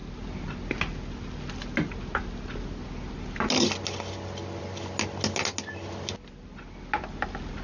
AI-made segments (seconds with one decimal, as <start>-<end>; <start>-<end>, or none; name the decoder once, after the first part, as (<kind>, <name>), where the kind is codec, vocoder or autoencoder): none